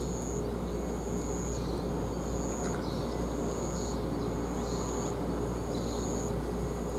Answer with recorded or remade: recorded